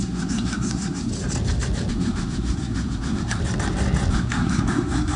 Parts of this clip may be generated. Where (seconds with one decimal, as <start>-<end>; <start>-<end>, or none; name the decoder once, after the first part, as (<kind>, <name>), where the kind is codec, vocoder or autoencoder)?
0.0-1.1 (codec, SNAC); 1.9-3.4; 4.1-5.2